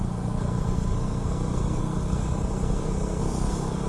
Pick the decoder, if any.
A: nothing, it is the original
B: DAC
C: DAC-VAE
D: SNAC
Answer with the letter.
D